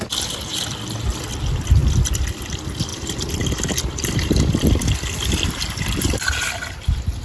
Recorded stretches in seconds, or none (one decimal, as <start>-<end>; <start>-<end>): 0.5-1.2